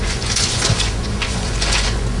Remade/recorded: remade